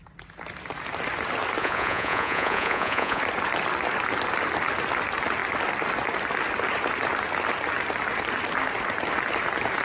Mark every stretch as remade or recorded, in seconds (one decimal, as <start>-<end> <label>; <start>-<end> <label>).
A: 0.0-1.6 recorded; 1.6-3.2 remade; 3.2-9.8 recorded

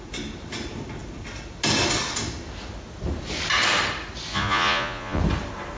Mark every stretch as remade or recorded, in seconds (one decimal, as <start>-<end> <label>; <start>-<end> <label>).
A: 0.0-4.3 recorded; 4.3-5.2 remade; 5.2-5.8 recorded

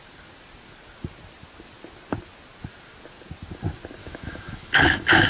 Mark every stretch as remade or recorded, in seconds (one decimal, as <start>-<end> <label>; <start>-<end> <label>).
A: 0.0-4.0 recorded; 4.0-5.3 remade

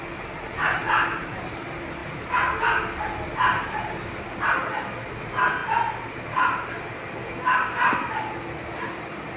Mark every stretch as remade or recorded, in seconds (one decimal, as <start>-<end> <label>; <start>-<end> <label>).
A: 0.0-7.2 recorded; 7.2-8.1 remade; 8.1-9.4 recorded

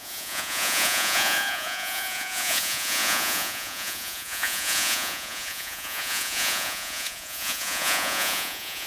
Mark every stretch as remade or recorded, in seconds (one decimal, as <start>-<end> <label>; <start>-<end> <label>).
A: 0.0-8.9 remade